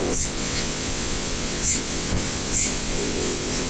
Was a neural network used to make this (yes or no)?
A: yes